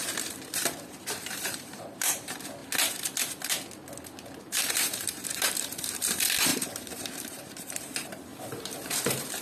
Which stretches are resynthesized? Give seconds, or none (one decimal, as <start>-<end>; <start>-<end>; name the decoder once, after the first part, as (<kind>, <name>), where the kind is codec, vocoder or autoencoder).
0.0-2.6 (vocoder, BigVGAN v2); 4.4-8.3; 9.0-9.4